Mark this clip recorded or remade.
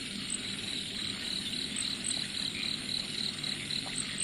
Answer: recorded